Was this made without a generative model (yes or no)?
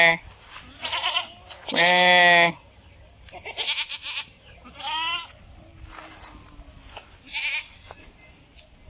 yes